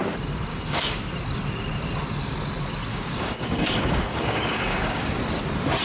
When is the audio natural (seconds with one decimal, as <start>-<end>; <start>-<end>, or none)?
0.0-0.5; 1.0-2.9; 5.2-5.8